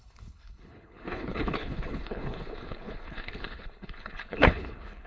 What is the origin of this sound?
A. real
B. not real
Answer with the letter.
B